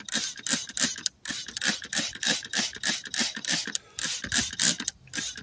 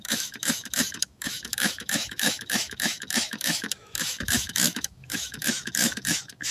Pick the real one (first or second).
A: first